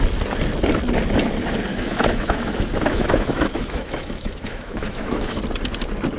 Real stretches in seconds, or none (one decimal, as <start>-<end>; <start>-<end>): 0.0-1.7; 5.4-6.2